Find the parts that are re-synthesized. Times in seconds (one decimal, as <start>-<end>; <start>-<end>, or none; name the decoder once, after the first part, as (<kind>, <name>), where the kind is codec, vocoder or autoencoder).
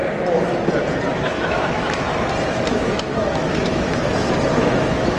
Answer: 1.1-2.1 (autoencoder, DAC-VAE); 2.7-3.9; 4.6-5.2